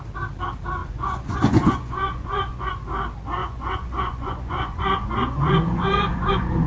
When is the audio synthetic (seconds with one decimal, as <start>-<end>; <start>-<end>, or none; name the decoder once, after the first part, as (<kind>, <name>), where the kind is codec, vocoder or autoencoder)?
0.8-2.7 (vocoder, Vocos); 3.4-6.7